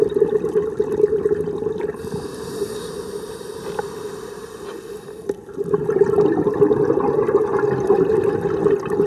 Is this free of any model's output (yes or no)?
yes